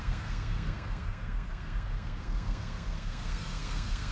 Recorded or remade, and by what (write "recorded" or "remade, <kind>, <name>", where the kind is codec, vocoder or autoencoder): remade, codec, SNAC